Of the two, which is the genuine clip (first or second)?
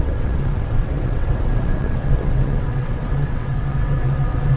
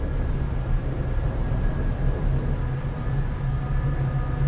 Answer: second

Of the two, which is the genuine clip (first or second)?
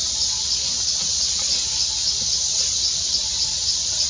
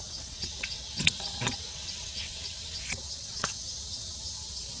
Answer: first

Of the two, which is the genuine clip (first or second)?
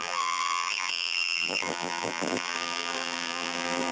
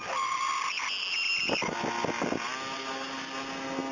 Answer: second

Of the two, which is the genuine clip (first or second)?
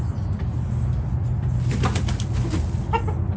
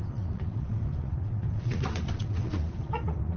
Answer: first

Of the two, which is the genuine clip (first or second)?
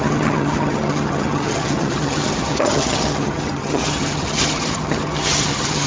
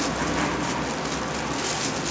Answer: second